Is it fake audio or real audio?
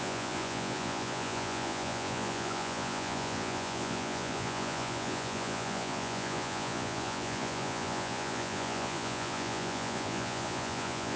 fake